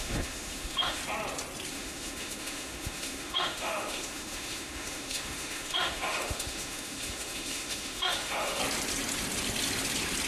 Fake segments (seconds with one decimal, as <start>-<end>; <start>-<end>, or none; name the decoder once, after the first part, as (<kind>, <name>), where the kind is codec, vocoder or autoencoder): 0.0-1.0 (autoencoder, DAC-VAE); 1.7-8.6